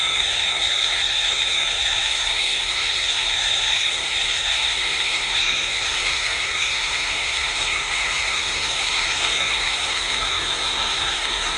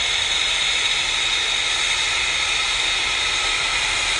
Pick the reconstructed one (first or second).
first